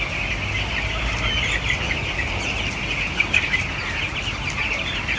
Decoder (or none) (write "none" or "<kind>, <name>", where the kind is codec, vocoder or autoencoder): none